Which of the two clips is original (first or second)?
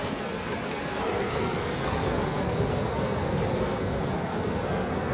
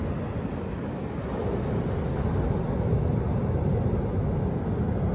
second